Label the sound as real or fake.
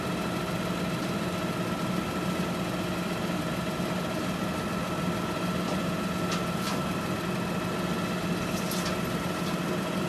real